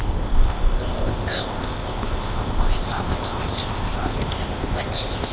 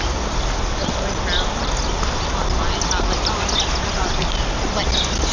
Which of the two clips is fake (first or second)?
first